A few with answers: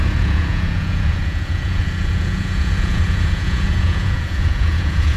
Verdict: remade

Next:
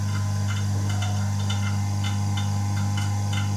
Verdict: recorded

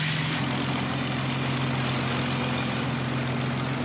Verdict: recorded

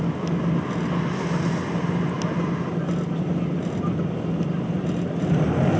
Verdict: recorded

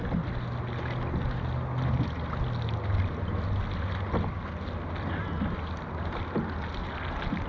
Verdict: recorded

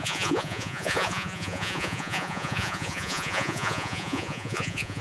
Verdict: remade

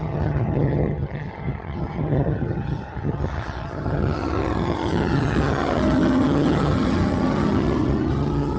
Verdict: remade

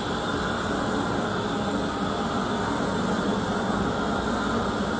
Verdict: recorded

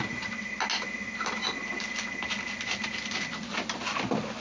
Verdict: recorded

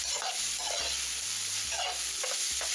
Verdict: recorded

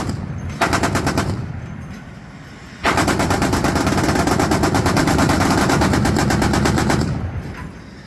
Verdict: recorded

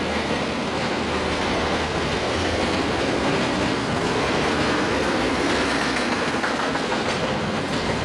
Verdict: remade